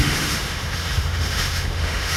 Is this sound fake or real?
fake